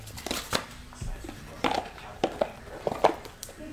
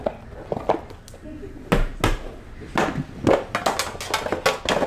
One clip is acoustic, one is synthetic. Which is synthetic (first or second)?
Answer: first